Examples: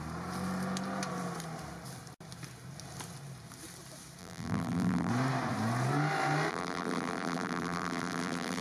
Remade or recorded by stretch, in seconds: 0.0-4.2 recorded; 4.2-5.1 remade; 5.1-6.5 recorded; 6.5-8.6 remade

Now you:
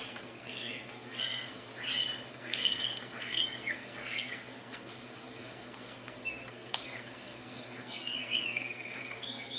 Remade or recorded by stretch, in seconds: 0.0-1.7 remade; 1.7-2.3 recorded; 2.3-9.6 remade

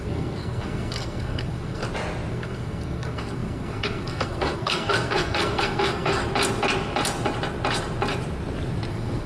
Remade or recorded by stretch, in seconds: 0.0-1.8 remade; 1.8-2.3 recorded; 2.3-6.2 remade; 6.2-8.9 recorded; 8.9-9.3 remade

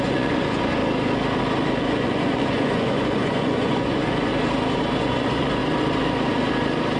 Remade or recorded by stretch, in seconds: 0.0-0.8 remade; 0.8-1.8 recorded; 1.8-4.3 remade; 4.3-5.0 recorded; 5.0-5.6 remade; 5.6-7.0 recorded

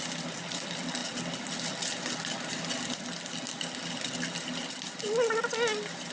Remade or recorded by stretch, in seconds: 0.0-1.0 remade; 1.0-4.7 recorded; 4.7-6.1 remade

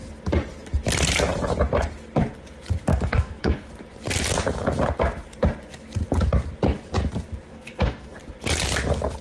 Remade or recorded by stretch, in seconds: 0.0-2.9 recorded; 2.9-3.7 remade; 3.7-7.5 recorded; 7.5-8.2 remade; 8.2-9.2 recorded

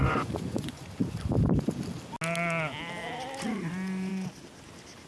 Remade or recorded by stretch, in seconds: 0.0-0.8 remade; 0.8-3.6 recorded; 3.6-4.1 remade; 4.1-5.1 recorded

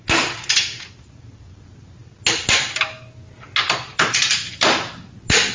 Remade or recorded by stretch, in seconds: 0.0-5.5 recorded